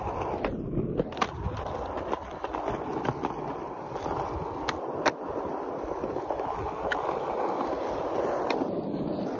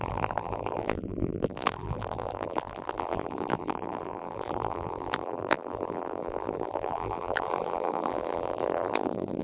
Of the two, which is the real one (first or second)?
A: first